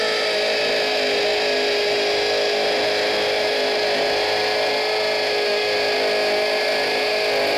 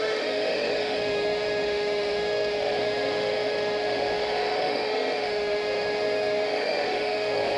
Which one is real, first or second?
first